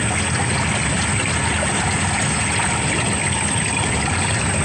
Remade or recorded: recorded